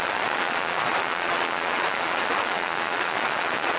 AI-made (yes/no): yes